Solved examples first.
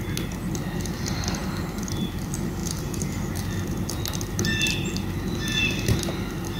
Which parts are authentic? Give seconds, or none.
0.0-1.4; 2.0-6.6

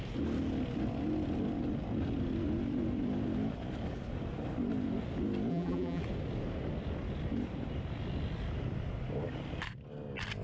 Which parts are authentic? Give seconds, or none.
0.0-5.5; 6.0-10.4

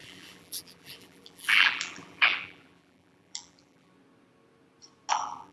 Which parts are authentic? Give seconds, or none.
3.9-5.1

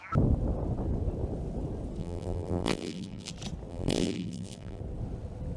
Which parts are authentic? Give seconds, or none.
0.0-2.0; 3.3-3.7; 4.8-5.6

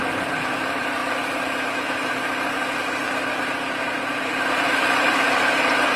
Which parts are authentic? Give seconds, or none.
1.0-4.6

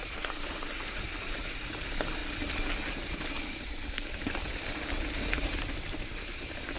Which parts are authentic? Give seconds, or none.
2.2-2.9